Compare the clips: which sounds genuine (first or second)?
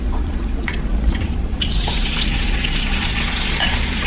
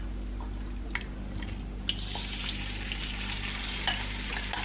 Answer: second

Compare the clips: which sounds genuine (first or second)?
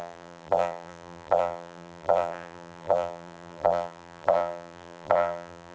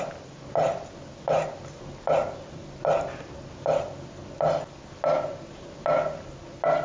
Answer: second